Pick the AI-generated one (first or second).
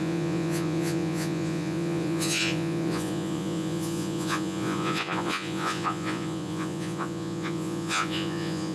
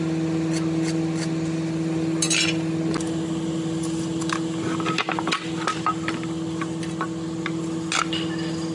first